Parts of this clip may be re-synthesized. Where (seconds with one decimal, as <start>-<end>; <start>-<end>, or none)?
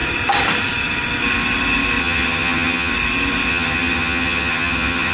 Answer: 2.0-2.9; 3.5-5.1